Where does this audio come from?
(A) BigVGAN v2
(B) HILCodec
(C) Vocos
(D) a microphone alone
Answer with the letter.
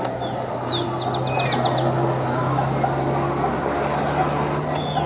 D